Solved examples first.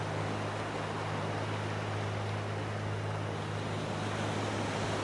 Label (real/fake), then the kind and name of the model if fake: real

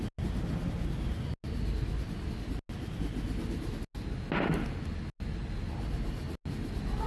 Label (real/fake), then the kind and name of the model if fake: real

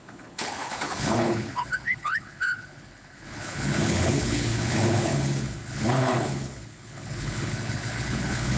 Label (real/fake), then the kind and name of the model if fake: fake, codec, HILCodec